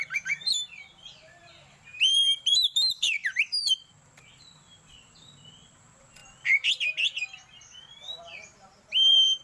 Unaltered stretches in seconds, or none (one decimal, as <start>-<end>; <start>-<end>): none